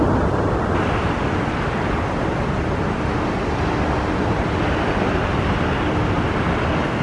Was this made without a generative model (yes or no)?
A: yes